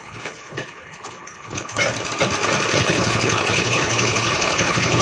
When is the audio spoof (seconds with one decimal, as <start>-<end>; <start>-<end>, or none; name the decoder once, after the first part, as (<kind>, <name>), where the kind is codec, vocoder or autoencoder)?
0.0-1.8 (codec, HILCodec); 2.8-5.0